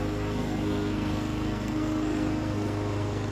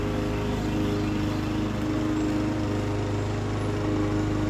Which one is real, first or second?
second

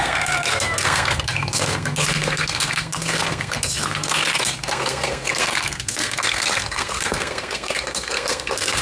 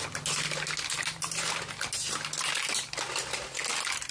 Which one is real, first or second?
second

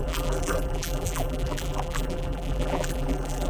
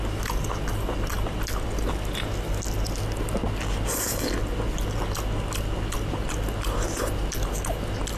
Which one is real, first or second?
second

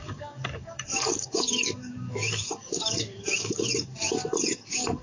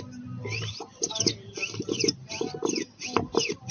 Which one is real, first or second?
second